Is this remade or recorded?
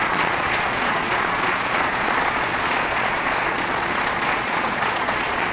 remade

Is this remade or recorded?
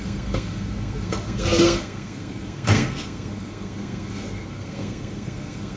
remade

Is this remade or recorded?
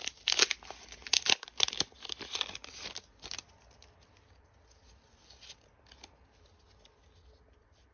recorded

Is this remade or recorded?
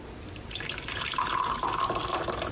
recorded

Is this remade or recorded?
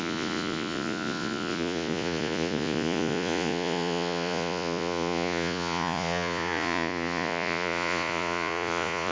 remade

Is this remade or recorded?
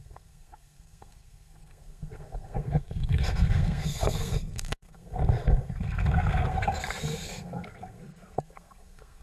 remade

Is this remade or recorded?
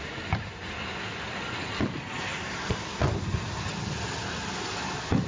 recorded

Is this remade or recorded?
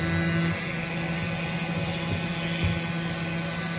recorded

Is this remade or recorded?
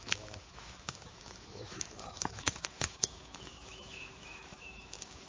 remade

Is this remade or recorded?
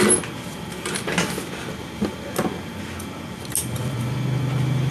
recorded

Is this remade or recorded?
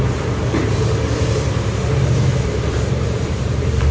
remade